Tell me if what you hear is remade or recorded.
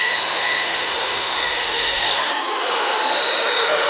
remade